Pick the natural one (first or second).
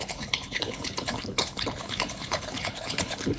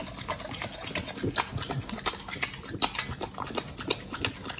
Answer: second